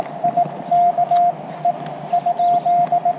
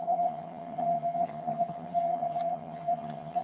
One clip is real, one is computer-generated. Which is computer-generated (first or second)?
second